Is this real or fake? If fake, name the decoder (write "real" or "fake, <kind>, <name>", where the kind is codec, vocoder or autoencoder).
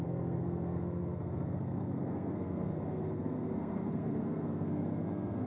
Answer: fake, codec, SNAC